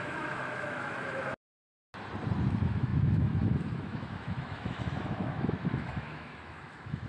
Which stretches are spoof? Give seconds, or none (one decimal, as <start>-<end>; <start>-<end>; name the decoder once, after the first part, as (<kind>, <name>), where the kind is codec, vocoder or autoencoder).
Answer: 0.0-1.8 (autoencoder, DAC-VAE); 2.5-7.1

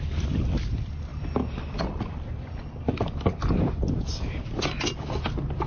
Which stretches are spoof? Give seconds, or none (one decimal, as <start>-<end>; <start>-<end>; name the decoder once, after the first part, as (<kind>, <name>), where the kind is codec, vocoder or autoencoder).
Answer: none

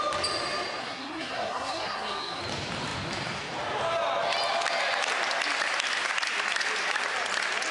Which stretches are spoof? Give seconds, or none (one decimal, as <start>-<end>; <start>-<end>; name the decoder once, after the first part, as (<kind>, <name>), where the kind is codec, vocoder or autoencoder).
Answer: 0.8-2.4 (codec, SNAC)

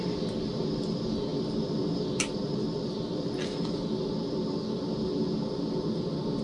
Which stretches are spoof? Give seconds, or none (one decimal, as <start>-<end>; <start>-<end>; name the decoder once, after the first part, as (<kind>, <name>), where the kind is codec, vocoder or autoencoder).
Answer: none